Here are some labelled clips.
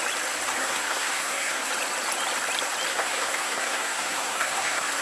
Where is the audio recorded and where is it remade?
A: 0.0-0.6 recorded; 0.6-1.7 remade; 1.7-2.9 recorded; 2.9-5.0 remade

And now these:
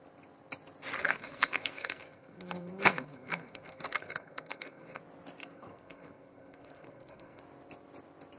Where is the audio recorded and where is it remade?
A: 0.0-1.0 recorded; 1.0-5.0 remade; 5.0-5.4 recorded; 5.4-7.4 remade; 7.4-8.4 recorded

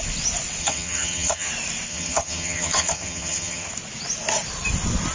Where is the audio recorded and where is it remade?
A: 0.0-0.6 recorded; 0.6-1.5 remade; 1.5-1.9 recorded; 1.9-3.7 remade; 3.7-5.1 recorded

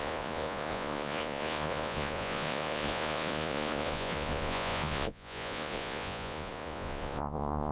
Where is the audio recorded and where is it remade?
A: 0.0-7.7 remade

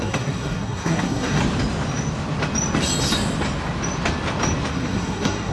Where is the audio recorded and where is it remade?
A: 0.0-1.4 remade; 1.4-4.7 recorded; 4.7-5.5 remade

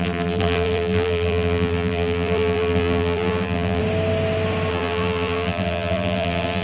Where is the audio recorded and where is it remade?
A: 0.0-3.8 remade; 3.8-4.7 recorded; 4.7-6.6 remade